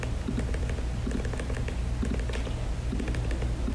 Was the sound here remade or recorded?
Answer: recorded